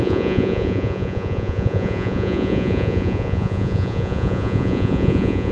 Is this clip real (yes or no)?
no